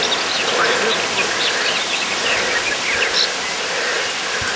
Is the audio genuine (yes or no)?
yes